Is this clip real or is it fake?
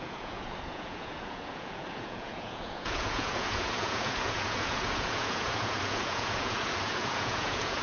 fake